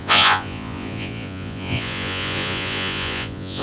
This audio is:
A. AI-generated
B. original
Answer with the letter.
A